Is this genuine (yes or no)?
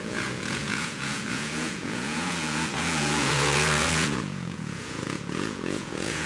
no